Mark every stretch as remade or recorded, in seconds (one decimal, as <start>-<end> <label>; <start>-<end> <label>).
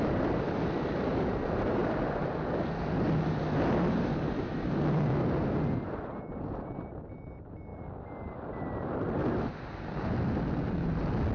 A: 0.0-11.3 recorded